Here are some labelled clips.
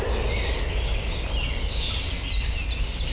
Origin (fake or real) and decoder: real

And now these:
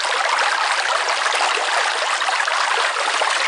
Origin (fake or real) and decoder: real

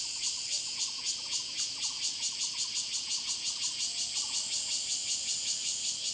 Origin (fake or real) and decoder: real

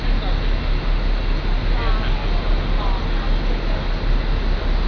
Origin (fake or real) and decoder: real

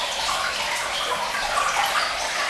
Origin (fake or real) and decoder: real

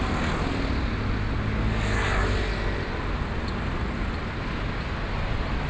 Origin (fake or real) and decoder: real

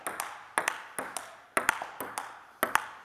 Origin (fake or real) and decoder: real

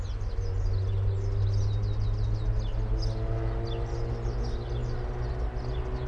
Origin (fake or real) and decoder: real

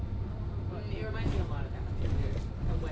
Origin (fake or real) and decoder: real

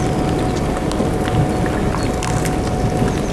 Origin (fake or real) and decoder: real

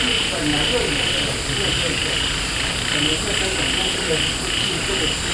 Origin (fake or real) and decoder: real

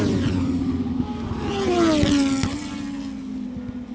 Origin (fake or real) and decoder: real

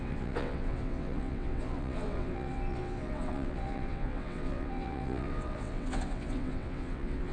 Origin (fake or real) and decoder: fake, vocoder, WaveNeXt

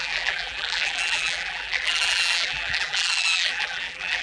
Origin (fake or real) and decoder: fake, vocoder, BigVGAN v2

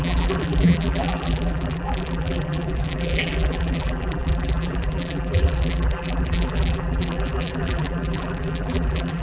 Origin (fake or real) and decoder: fake, vocoder, BigVGAN v2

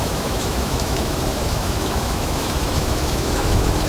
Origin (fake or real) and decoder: fake, autoencoder, DAC-VAE